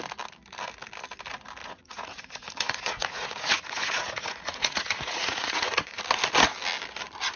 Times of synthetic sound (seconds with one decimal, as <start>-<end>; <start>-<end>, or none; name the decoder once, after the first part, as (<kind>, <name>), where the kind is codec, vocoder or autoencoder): 1.6-6.0 (vocoder, Vocos)